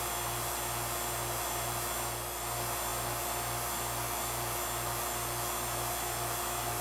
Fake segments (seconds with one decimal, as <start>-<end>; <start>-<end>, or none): none